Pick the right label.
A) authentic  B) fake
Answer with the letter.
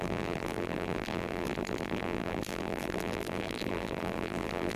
B